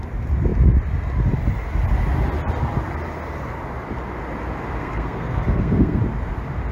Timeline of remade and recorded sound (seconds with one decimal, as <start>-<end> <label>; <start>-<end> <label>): 0.0-4.8 recorded; 4.8-6.0 remade; 6.0-6.7 recorded